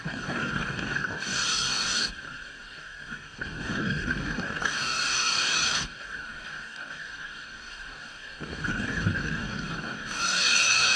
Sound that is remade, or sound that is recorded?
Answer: remade